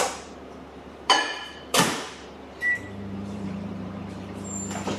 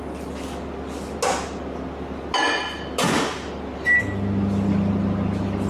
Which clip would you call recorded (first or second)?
second